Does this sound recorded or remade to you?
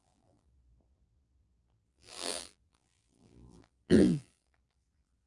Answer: remade